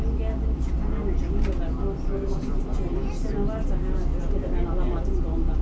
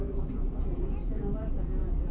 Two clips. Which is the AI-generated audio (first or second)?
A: second